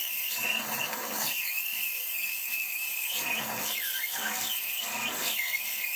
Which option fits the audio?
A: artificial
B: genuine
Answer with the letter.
A